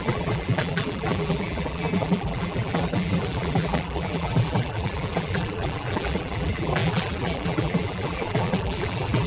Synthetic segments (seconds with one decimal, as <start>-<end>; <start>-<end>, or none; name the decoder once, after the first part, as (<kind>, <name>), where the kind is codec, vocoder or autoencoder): 0.0-9.3 (vocoder, BigVGAN v2)